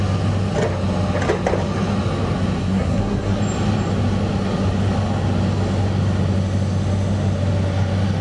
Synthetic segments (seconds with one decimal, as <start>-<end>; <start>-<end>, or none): 2.6-3.4